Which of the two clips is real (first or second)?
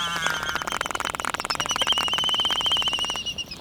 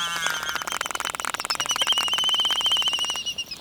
second